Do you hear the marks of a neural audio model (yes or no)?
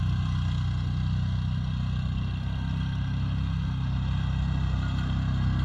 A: no